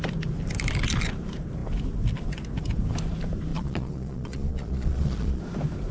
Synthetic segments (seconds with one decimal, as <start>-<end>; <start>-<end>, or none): 3.5-5.4